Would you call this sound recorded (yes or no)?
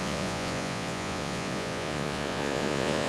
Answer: no